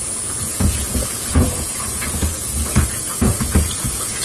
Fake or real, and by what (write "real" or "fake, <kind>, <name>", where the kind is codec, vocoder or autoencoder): fake, vocoder, Vocos